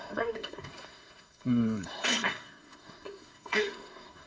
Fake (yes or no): yes